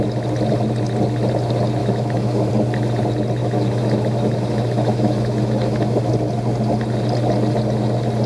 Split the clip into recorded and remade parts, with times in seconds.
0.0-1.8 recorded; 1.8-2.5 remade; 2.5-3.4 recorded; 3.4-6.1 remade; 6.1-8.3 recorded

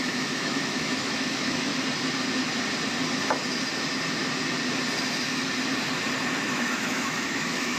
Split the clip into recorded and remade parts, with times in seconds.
0.0-1.7 remade; 1.7-6.4 recorded; 6.4-7.8 remade

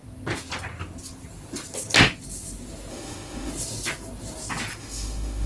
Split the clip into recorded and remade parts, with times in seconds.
0.0-2.9 recorded; 2.9-3.5 remade; 3.5-4.8 recorded; 4.8-5.5 remade

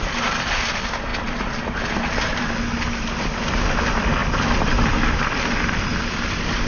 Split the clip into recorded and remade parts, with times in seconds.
0.0-6.7 recorded

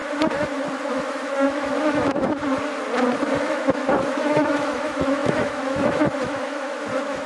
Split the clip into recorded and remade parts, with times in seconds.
0.0-0.8 recorded; 0.8-2.4 remade; 2.4-3.4 recorded; 3.4-7.3 remade